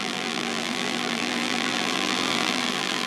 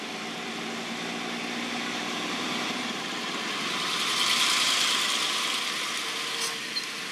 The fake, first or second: first